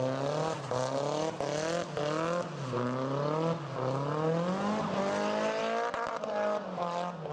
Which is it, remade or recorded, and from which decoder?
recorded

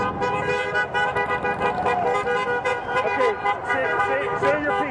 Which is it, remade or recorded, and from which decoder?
recorded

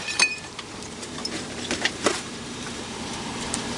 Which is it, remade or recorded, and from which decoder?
remade, vocoder, BigVGAN v2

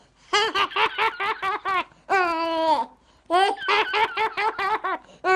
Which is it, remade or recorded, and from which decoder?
recorded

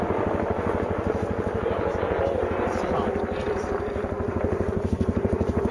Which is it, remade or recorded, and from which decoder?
remade, vocoder, BigVGAN v2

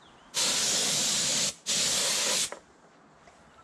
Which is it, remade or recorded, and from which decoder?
recorded